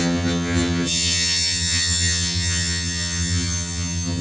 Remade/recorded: remade